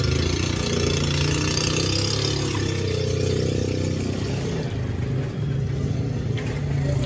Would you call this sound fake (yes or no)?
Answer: no